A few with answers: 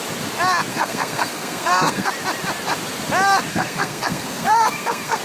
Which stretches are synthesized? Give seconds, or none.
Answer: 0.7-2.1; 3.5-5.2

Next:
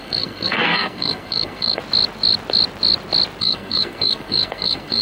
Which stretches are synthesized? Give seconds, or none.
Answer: 0.0-1.8; 3.4-5.0

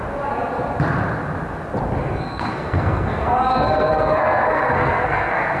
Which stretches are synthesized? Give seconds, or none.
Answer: 2.0-5.6

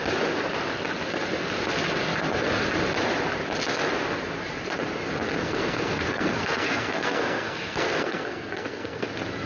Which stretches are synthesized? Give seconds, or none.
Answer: 5.4-9.1

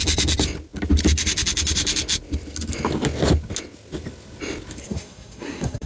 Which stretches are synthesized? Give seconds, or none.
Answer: 4.8-5.9

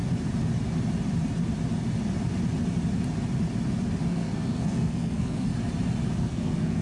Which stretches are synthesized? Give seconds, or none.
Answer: 4.1-5.5; 6.1-6.8

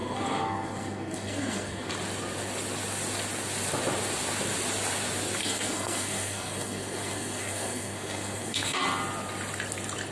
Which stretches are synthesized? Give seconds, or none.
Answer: 0.0-1.9; 5.4-8.8

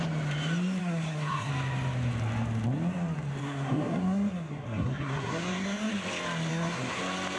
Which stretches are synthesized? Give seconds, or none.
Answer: 0.8-1.5; 3.4-5.9; 6.5-7.0